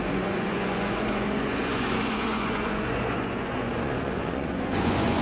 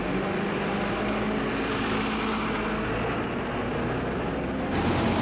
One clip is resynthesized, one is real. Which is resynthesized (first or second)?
first